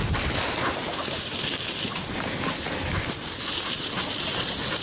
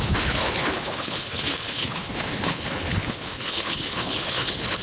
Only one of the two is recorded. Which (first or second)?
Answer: first